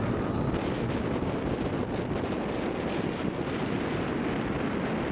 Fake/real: real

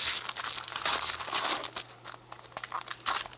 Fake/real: real